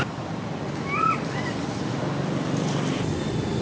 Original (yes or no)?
yes